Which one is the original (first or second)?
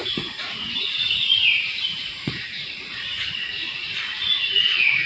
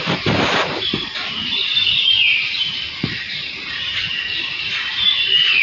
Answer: second